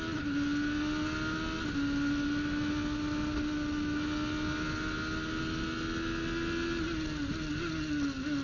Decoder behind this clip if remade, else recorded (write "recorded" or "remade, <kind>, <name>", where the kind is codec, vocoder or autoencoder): recorded